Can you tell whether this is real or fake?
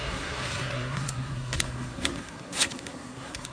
fake